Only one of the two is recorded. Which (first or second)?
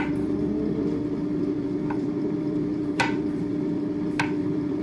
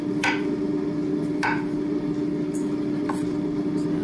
second